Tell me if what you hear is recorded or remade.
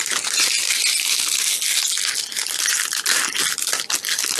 recorded